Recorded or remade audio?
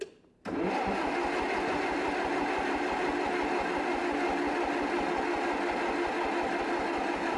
recorded